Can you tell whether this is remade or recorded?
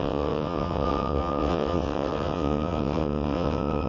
remade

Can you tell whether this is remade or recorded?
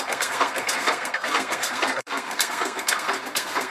remade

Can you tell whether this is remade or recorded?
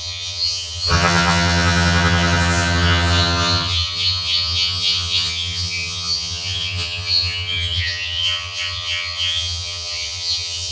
remade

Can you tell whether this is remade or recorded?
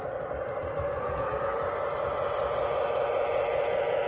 recorded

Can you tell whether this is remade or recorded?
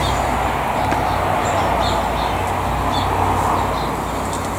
recorded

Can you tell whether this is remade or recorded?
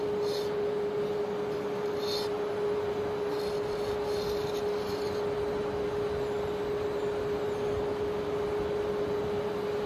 recorded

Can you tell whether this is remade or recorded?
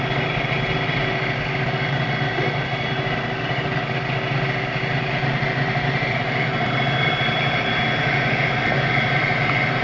recorded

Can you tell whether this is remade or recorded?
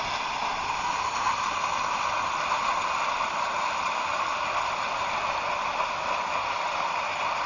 recorded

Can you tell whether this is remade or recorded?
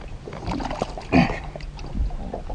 recorded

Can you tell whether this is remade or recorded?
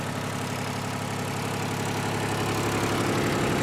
recorded